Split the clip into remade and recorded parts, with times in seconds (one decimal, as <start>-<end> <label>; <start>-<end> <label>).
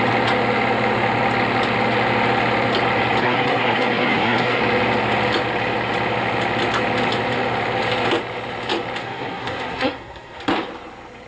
0.0-3.2 recorded; 3.2-4.6 remade; 4.6-9.0 recorded; 9.0-10.4 remade; 10.4-11.3 recorded